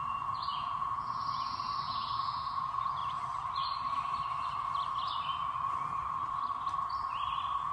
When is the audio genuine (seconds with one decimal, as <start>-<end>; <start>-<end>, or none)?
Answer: 3.0-7.7